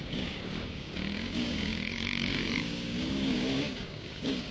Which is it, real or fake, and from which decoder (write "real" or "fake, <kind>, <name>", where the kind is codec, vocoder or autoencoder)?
fake, codec, DAC